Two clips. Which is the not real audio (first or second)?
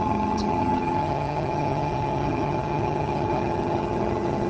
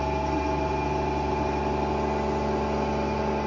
first